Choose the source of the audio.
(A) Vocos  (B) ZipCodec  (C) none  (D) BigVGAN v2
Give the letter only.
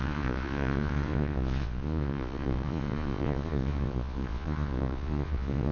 A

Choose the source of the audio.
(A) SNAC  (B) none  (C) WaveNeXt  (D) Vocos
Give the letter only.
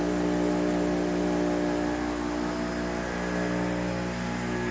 B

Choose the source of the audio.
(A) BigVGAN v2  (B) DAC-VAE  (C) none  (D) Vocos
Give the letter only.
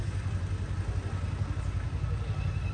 C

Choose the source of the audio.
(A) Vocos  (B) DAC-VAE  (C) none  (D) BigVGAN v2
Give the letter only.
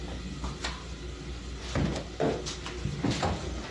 C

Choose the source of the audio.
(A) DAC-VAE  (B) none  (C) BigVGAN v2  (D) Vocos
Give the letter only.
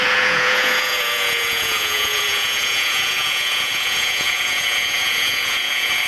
D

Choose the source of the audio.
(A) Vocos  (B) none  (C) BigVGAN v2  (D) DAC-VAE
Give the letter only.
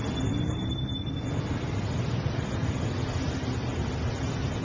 B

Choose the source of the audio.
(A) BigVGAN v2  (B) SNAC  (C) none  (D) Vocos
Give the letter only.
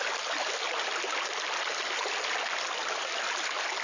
C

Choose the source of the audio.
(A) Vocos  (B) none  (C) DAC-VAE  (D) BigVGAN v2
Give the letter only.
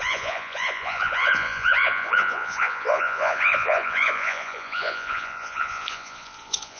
A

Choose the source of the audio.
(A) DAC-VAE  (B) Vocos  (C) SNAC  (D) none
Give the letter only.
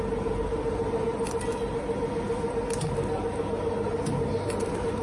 D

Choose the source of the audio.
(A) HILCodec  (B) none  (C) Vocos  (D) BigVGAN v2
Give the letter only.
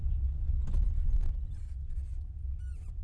B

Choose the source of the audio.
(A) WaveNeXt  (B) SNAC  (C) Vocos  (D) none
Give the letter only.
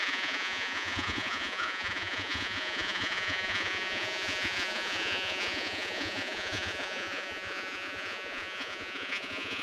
C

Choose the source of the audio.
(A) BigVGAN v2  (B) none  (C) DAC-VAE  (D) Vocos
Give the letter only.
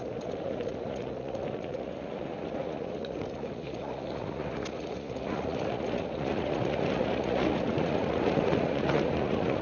D